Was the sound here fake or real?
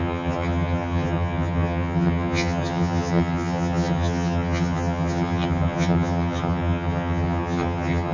fake